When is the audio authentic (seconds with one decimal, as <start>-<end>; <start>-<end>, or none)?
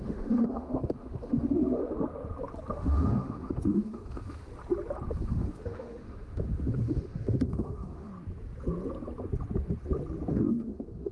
1.8-2.7; 4.5-5.1; 8.1-10.3